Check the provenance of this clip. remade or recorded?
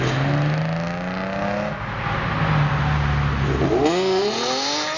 recorded